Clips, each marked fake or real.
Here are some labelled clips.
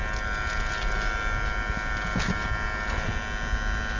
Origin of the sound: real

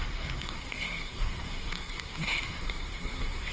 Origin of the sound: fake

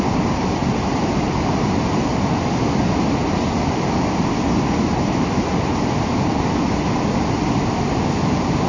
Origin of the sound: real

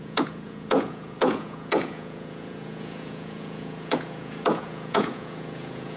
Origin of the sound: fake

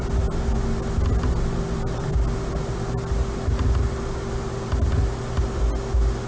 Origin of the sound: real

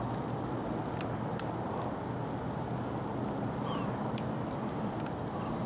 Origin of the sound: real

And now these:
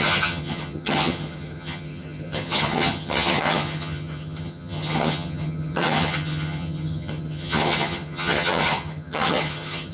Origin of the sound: fake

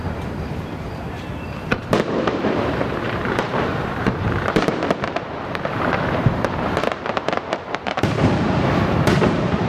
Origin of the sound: fake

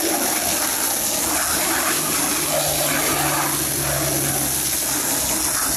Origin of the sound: real